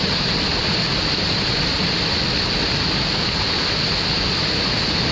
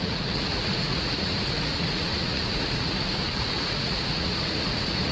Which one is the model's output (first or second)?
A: second